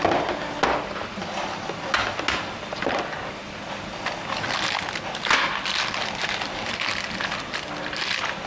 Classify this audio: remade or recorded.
recorded